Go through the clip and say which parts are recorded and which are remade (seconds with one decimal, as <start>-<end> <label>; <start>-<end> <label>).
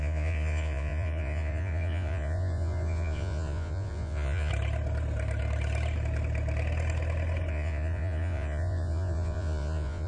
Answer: 0.0-4.5 remade; 4.5-7.5 recorded; 7.5-10.1 remade